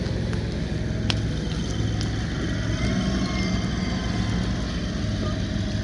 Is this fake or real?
real